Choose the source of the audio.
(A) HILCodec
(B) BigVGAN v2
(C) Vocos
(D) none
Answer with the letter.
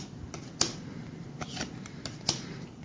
D